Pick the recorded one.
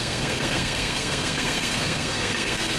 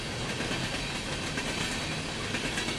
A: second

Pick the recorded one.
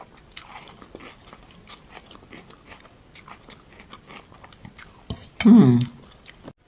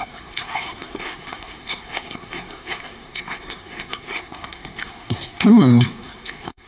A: first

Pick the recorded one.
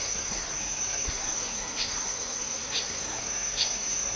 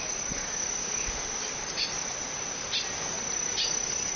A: second